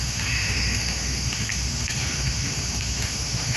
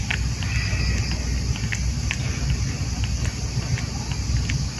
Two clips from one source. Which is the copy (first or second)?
first